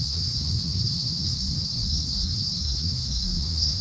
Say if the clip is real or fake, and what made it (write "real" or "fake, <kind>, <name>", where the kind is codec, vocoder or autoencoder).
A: fake, codec, SNAC